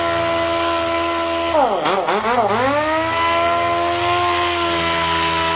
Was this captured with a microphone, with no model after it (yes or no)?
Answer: yes